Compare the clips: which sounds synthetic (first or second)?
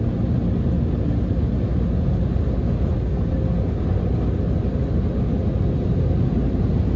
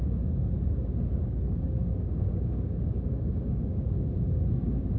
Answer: second